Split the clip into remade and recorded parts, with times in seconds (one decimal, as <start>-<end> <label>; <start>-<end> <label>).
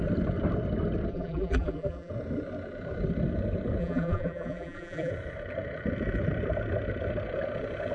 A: 0.0-1.1 recorded; 1.1-2.1 remade; 2.1-3.8 recorded; 3.8-5.1 remade; 5.1-7.9 recorded